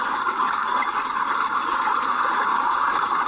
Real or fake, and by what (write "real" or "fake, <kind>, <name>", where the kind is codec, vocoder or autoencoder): fake, codec, DAC